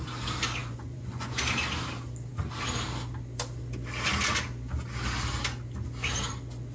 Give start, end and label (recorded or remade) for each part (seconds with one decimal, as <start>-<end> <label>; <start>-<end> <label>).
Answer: 0.0-0.6 recorded; 0.6-1.4 remade; 1.4-6.7 recorded